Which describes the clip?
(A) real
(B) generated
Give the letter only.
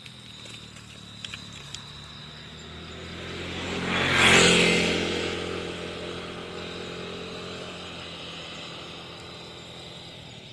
A